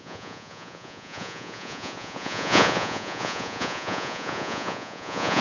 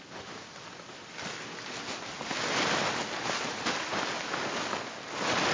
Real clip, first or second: second